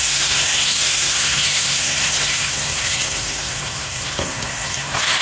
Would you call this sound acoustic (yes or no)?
no